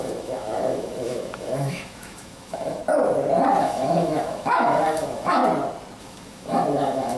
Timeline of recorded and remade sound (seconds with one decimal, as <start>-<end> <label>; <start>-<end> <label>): 0.0-2.8 remade; 2.8-3.6 recorded; 3.6-5.4 remade; 5.4-6.0 recorded; 6.0-7.2 remade